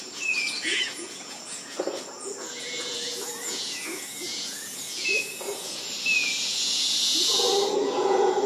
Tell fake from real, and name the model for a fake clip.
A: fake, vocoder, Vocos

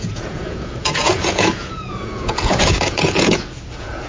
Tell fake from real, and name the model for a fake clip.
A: fake, vocoder, Vocos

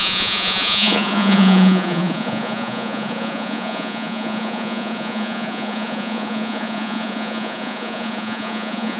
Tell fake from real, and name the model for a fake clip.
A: fake, vocoder, Vocos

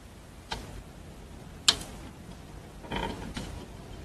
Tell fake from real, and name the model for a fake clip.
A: real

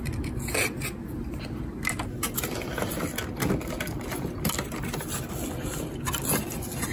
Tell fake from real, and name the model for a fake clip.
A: real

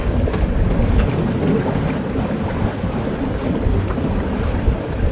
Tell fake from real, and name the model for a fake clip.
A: real